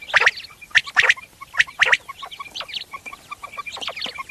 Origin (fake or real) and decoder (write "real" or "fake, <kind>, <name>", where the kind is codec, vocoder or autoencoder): real